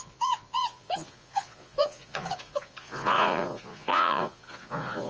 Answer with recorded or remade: remade